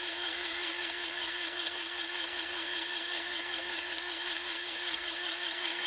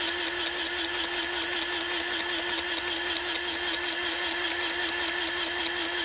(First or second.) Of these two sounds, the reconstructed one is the first